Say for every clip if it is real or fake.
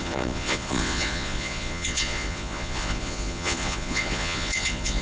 fake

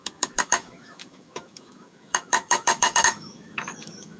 fake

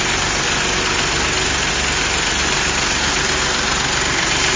real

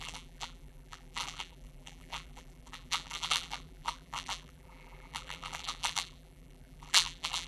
fake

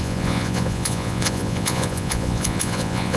fake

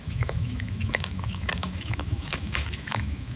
fake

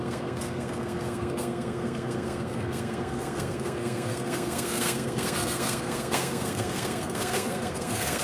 fake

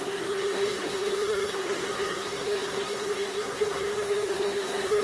fake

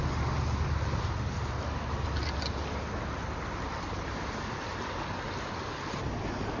real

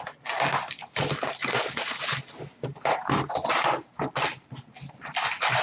real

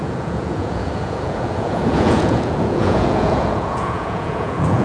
fake